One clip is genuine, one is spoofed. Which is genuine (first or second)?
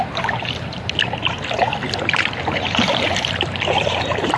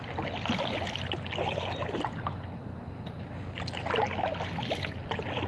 second